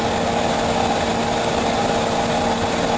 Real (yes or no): yes